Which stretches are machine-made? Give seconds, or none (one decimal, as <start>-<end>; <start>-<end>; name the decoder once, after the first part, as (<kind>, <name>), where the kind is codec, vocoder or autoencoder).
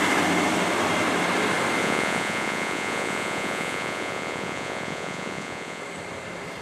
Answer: 1.8-5.8 (vocoder, Vocos)